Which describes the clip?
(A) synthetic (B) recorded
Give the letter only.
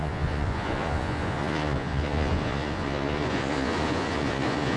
A